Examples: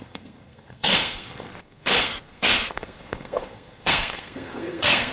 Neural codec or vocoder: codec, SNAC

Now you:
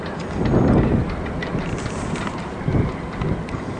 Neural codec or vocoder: none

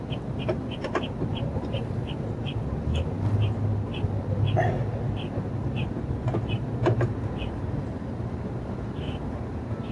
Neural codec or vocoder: none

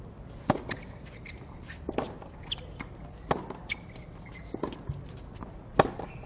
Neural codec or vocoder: none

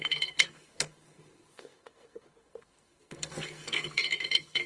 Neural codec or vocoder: codec, SNAC